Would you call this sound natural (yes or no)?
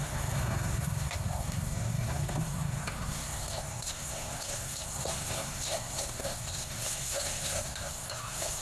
no